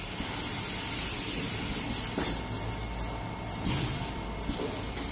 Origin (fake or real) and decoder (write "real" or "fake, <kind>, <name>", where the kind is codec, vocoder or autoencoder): real